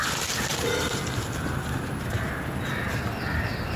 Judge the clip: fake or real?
real